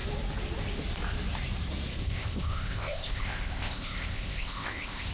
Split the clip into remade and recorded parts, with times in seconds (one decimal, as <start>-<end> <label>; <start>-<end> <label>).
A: 0.0-2.0 recorded; 2.0-5.1 remade